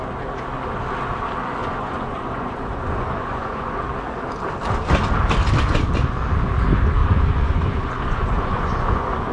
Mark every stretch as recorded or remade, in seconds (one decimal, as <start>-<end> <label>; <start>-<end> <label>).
0.0-1.6 recorded; 1.6-3.8 remade; 3.8-7.0 recorded; 7.0-9.3 remade